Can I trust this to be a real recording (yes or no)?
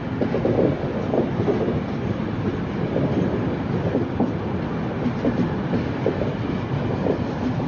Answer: yes